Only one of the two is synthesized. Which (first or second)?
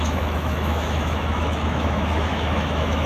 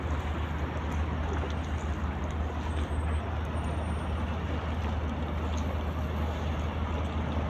first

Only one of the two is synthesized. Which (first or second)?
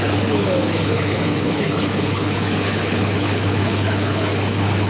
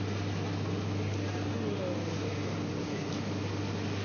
first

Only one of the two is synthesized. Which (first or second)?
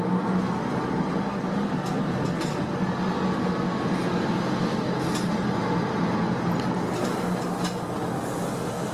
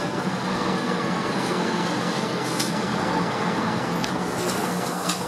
second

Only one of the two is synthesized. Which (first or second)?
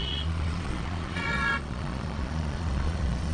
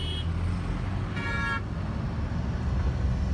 first